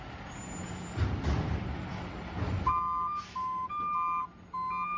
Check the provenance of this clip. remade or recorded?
recorded